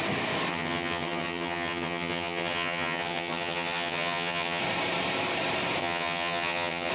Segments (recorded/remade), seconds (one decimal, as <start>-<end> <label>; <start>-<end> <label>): 0.0-0.5 recorded; 0.5-4.6 remade; 4.6-5.8 recorded; 5.8-6.9 remade